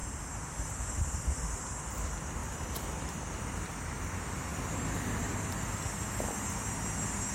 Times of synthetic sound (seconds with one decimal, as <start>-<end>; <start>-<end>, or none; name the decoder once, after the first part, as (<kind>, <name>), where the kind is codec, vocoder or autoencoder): 0.0-1.4 (vocoder, BigVGAN v2)